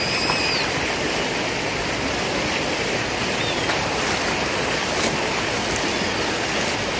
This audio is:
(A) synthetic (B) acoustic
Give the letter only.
B